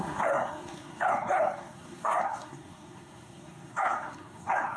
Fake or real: fake